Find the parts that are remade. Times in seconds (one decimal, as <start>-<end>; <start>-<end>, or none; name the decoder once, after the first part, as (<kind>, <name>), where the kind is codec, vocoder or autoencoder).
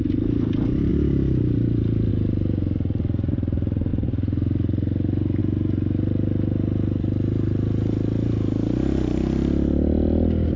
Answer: 0.9-2.1 (vocoder, BigVGAN v2); 3.9-5.4